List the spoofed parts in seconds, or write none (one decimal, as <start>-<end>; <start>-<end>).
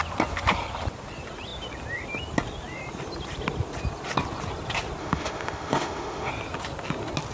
5.0-6.3